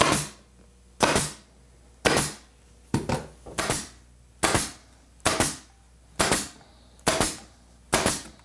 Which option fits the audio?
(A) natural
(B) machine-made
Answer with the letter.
A